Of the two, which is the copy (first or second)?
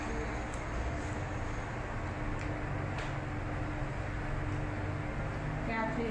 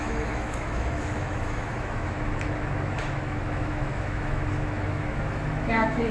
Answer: second